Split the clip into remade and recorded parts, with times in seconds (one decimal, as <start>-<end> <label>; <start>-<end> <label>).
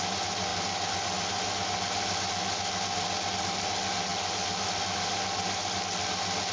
0.0-6.5 recorded